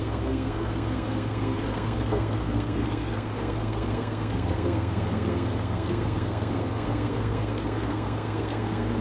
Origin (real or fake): fake